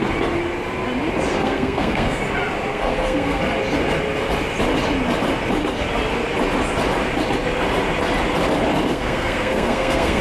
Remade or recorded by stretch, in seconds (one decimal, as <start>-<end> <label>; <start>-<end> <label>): 0.0-1.3 recorded; 1.3-2.2 remade; 2.2-2.7 recorded; 2.7-3.4 remade; 3.4-8.9 recorded; 8.9-10.2 remade